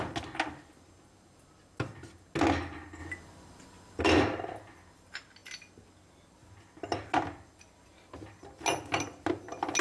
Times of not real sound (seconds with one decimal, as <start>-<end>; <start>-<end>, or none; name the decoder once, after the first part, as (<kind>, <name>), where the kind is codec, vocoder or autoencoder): none